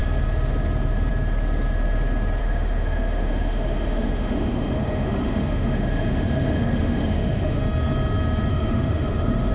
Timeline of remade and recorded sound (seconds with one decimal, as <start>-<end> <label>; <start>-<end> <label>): 0.0-2.4 recorded; 2.4-7.6 remade; 7.6-8.5 recorded; 8.5-9.5 remade